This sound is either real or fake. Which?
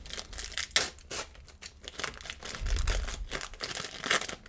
real